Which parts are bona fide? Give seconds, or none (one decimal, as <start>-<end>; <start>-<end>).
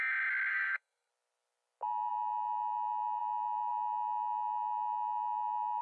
0.0-0.5; 1.1-5.8